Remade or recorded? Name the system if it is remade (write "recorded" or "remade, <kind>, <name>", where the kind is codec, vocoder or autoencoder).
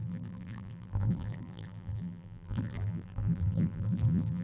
remade, vocoder, BigVGAN v2